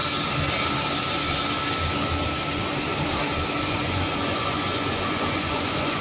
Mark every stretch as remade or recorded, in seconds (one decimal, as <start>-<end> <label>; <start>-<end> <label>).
0.0-3.6 recorded; 3.6-6.0 remade